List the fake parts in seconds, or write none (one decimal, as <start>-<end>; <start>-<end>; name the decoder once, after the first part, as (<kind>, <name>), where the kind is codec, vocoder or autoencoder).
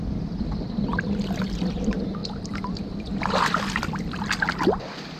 none